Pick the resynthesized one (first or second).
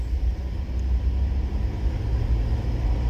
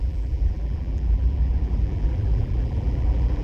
second